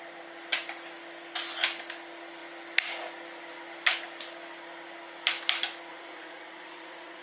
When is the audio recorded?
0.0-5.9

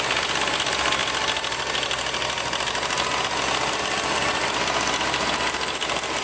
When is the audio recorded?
0.0-6.2